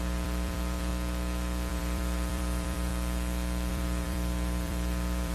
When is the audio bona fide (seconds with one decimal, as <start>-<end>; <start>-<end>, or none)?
0.9-1.7; 2.9-3.7